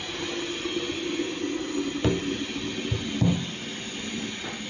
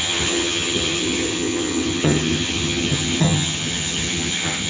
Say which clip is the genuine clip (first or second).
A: first